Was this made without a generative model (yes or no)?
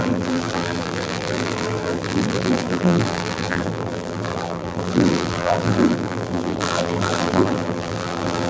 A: no